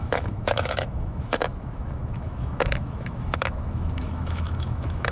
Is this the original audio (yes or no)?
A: no